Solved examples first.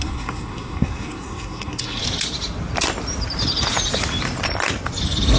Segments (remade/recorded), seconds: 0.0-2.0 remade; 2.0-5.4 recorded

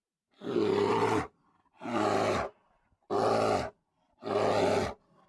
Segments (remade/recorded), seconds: 0.0-5.3 recorded

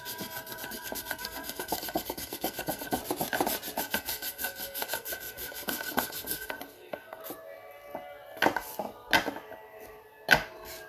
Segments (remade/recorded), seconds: 0.0-3.0 remade; 3.0-3.8 recorded; 3.8-7.2 remade; 7.2-10.9 recorded

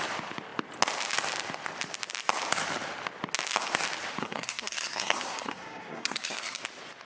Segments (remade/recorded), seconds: 0.0-4.2 recorded; 4.2-6.6 remade; 6.6-7.1 recorded

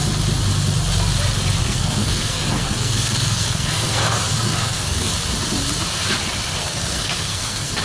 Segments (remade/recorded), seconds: 0.0-1.6 recorded; 1.6-5.1 remade; 5.1-6.6 recorded; 6.6-7.8 remade